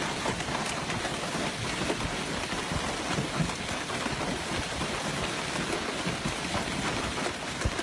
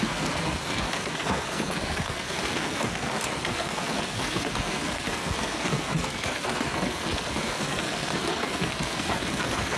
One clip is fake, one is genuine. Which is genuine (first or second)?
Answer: first